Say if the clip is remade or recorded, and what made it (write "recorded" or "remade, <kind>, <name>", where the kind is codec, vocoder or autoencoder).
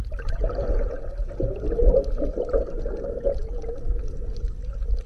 recorded